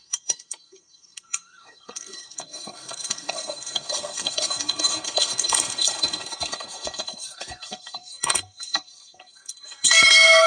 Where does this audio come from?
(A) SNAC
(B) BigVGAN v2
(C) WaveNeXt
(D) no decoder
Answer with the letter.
A